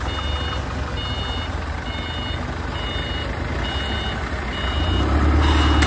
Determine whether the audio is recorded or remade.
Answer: recorded